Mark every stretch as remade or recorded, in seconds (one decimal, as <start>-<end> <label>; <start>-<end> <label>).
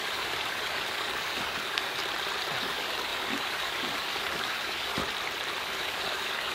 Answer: 0.0-2.0 remade; 2.0-2.6 recorded; 2.6-5.0 remade; 5.0-5.6 recorded; 5.6-6.5 remade